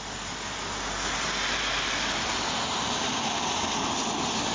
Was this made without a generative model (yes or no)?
yes